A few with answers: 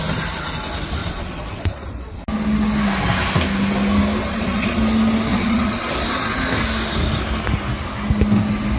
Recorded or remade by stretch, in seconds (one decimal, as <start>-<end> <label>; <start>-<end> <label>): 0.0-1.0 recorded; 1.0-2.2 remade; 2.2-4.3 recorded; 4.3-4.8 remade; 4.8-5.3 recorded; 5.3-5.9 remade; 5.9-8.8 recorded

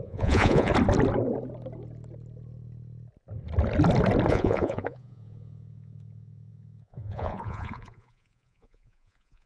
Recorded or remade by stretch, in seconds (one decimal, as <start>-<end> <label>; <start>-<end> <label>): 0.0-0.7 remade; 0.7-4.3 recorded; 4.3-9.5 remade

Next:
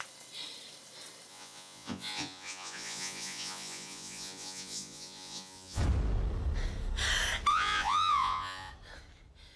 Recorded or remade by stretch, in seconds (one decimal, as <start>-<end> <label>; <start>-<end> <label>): 0.0-1.3 recorded; 1.3-5.8 remade; 5.8-7.5 recorded; 7.5-8.7 remade; 8.7-9.6 recorded

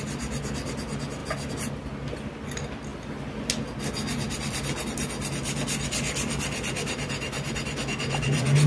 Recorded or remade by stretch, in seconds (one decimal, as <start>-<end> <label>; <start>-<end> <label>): 0.0-8.7 recorded

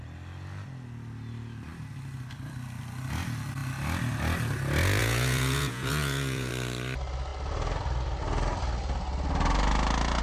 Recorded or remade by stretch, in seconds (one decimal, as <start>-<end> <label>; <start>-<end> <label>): 0.0-5.0 recorded; 5.0-6.5 remade; 6.5-10.2 recorded

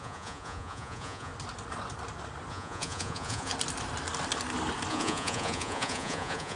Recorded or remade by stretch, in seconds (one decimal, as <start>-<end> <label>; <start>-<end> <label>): 0.0-1.3 remade; 1.3-2.5 recorded; 2.5-3.5 remade; 3.5-4.9 recorded; 4.9-6.6 remade